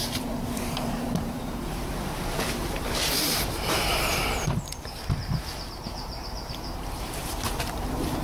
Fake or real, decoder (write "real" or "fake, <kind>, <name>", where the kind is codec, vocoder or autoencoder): fake, vocoder, BigVGAN v2